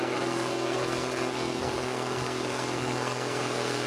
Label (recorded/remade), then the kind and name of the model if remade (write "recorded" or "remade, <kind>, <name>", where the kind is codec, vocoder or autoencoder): remade, codec, SNAC